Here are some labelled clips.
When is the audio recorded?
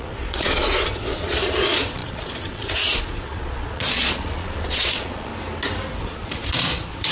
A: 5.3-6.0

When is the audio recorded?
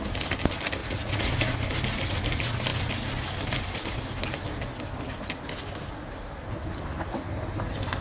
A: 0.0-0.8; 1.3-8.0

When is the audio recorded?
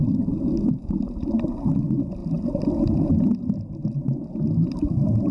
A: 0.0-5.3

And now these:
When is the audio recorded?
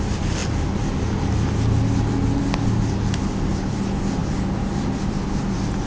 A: 0.0-5.9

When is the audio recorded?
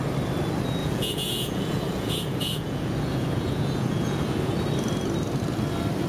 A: 0.0-0.8; 4.5-6.1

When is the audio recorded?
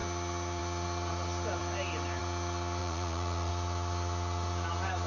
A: 0.0-2.8; 3.5-5.1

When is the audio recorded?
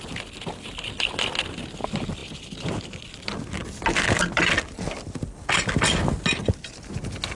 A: 0.0-7.3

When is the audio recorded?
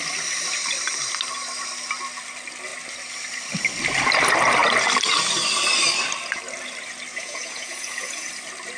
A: 0.0-7.1; 8.3-8.8